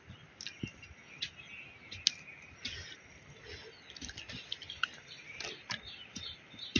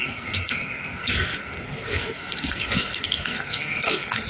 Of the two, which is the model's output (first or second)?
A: second